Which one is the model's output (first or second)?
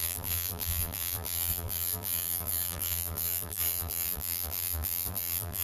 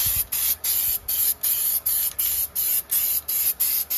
first